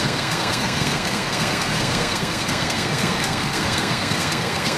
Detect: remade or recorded remade